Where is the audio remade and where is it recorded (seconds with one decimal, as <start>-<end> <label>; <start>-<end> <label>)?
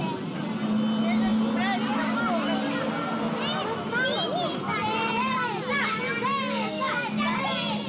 0.0-6.3 recorded; 6.3-6.9 remade; 6.9-7.9 recorded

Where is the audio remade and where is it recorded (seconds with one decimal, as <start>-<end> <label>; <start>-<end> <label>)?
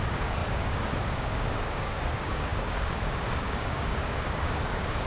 0.0-5.1 remade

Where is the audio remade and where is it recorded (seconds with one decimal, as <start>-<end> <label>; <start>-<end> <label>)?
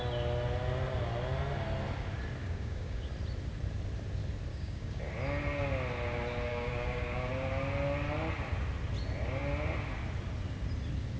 0.0-2.4 recorded; 2.4-3.0 remade; 3.0-4.5 recorded; 4.5-5.0 remade; 5.0-6.5 recorded; 6.5-7.3 remade; 7.3-11.2 recorded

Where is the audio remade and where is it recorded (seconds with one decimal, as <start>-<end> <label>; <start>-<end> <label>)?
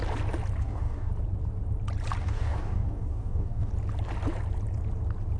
0.0-0.6 recorded; 0.6-1.1 remade; 1.1-2.2 recorded; 2.2-3.7 remade; 3.7-5.4 recorded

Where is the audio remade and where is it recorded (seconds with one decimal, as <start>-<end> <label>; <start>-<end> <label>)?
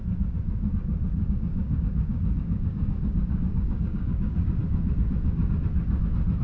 0.0-0.8 recorded; 0.8-4.6 remade; 4.6-6.4 recorded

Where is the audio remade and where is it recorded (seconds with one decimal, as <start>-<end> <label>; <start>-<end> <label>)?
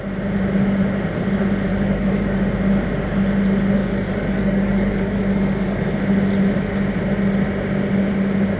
0.0-1.7 recorded; 1.7-2.5 remade; 2.5-3.8 recorded; 3.8-5.8 remade; 5.8-8.6 recorded